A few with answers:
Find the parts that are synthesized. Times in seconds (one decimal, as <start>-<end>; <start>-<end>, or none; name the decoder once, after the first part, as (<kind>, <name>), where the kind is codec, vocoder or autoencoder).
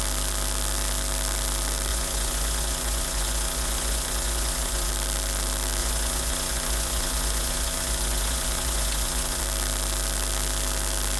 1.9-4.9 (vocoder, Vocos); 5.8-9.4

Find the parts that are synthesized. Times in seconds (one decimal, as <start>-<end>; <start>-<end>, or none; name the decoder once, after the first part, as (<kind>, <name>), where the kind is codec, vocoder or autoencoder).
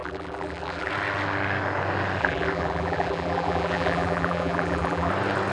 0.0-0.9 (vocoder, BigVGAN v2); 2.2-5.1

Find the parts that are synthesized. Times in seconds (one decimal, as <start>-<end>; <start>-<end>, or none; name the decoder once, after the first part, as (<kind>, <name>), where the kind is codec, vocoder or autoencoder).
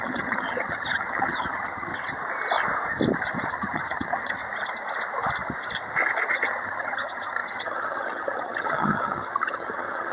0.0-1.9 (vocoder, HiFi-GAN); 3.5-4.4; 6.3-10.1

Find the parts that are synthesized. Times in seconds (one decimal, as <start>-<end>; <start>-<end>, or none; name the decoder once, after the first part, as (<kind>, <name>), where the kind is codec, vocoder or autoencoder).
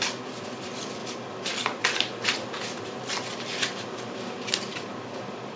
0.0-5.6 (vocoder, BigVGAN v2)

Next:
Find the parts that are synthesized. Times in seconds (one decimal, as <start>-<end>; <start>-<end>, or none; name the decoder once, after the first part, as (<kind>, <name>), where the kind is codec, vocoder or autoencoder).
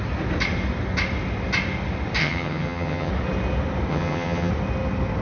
2.2-3.1 (vocoder, HiFi-GAN); 3.9-4.5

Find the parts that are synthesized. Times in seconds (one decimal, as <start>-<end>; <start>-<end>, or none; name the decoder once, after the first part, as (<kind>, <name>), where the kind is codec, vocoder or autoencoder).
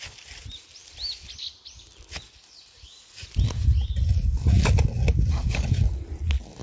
none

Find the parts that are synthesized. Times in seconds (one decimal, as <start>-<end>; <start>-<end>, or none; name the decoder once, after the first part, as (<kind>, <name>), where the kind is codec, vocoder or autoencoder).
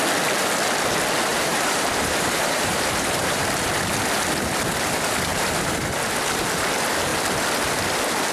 1.3-3.7 (vocoder, BigVGAN v2); 5.3-5.9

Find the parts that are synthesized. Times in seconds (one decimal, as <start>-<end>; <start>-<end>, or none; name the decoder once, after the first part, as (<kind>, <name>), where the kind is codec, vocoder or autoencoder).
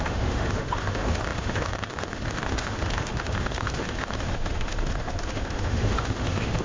0.0-6.6 (autoencoder, DAC-VAE)